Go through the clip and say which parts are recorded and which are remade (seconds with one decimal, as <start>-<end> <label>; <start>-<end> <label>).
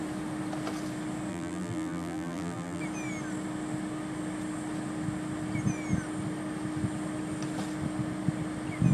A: 0.0-1.3 recorded; 1.3-2.8 remade; 2.8-8.9 recorded